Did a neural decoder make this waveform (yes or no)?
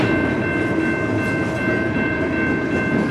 no